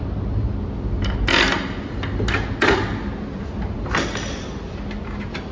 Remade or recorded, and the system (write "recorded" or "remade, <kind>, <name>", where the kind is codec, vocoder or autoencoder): recorded